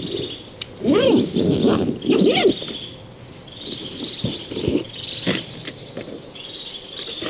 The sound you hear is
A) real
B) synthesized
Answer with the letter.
A